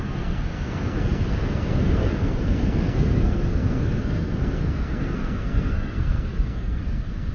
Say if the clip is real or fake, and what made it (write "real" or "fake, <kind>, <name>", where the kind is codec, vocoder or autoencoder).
fake, codec, SNAC